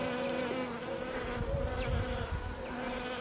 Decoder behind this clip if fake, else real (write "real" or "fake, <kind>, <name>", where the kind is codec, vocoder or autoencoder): real